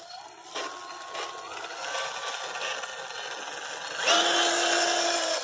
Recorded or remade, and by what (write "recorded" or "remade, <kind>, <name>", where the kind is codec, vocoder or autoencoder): recorded